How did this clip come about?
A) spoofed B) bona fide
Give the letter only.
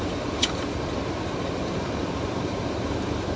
A